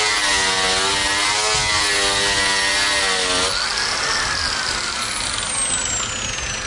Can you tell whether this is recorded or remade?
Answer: recorded